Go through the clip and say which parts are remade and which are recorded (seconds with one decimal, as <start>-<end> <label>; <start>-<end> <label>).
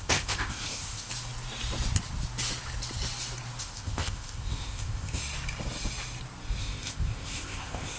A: 0.0-1.1 remade; 1.1-3.6 recorded; 3.6-5.2 remade; 5.2-6.6 recorded; 6.6-8.0 remade